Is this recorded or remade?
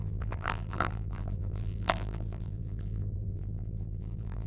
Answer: remade